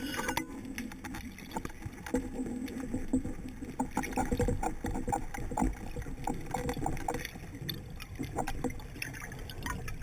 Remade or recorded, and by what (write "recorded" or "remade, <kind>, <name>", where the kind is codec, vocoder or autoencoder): recorded